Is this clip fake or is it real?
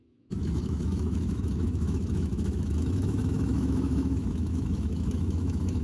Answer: fake